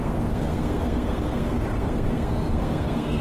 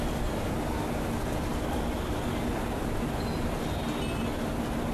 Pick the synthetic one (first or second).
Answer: first